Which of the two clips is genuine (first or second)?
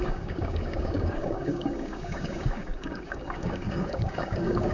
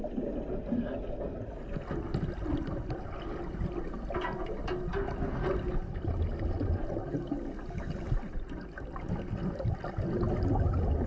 second